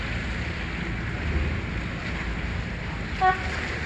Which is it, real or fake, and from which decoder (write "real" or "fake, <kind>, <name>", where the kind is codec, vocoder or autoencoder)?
real